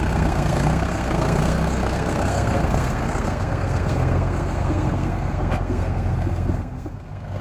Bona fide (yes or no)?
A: no